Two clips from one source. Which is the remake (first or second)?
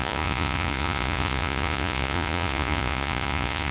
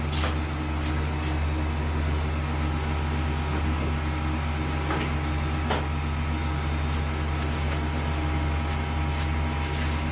first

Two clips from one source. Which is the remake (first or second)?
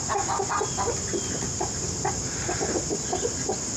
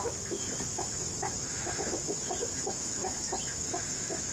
second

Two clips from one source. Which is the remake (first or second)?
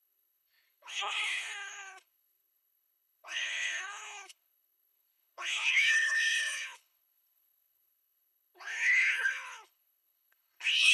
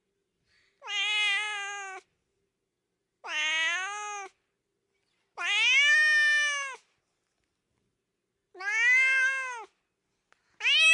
first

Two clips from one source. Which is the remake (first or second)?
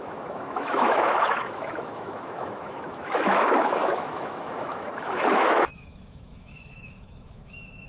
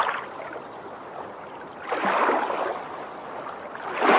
first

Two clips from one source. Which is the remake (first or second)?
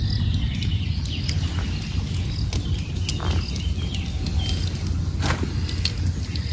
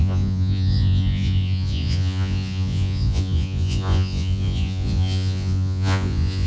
second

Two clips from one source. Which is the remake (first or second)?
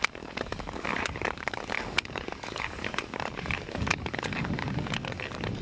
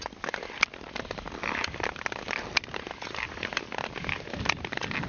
first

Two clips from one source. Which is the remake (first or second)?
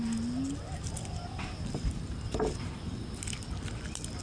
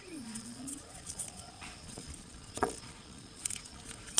second